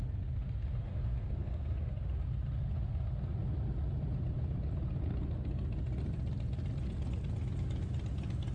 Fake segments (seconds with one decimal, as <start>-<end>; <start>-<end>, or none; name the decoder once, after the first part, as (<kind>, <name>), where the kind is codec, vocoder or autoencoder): 0.9-1.9 (codec, SNAC)